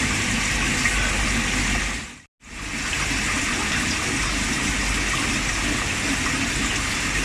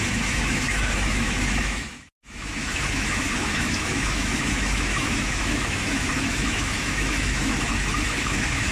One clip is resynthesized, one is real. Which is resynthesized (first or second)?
second